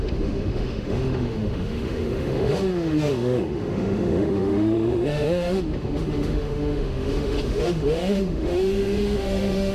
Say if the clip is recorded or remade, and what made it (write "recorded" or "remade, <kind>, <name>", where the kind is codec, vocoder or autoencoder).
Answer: remade, autoencoder, DAC-VAE